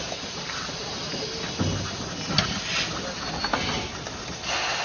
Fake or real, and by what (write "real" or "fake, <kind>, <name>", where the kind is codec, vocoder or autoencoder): real